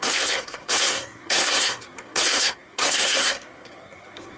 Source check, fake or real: fake